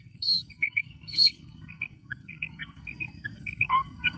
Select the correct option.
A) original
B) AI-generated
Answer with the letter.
B